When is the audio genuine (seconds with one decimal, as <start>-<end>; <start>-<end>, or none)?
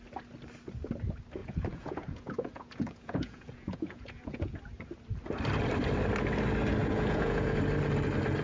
0.0-1.4; 4.6-6.8; 7.6-8.4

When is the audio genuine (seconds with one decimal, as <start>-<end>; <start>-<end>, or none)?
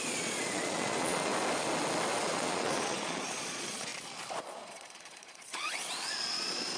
1.3-2.2; 3.9-4.4